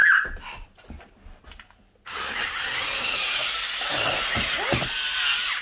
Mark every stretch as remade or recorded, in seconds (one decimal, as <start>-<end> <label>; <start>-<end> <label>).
0.0-5.6 recorded